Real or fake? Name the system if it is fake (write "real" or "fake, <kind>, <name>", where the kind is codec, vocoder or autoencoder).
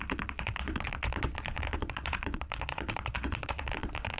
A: fake, vocoder, Vocos